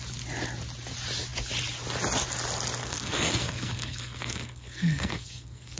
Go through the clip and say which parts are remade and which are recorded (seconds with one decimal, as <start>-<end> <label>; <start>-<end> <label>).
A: 0.0-2.8 recorded; 2.8-5.8 remade